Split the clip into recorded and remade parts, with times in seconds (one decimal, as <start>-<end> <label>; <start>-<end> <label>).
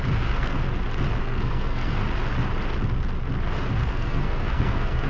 0.0-0.6 remade; 0.6-1.2 recorded; 1.2-2.0 remade; 2.0-3.7 recorded; 3.7-5.1 remade